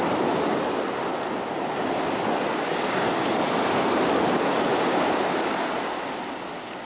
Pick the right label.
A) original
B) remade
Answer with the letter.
A